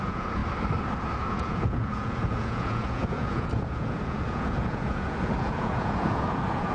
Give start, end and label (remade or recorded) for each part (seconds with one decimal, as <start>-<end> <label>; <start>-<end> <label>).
0.0-0.4 remade; 0.4-1.3 recorded; 1.3-6.7 remade